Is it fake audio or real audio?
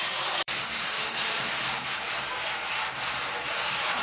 fake